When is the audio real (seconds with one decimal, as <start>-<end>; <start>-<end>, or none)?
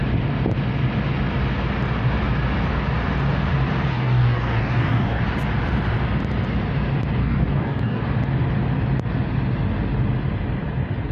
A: 0.0-3.9; 5.2-7.2; 8.0-11.1